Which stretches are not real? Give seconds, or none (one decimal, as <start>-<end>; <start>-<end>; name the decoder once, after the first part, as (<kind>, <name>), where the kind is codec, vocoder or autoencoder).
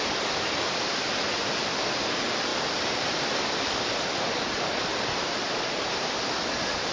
2.5-5.6 (vocoder, BigVGAN v2)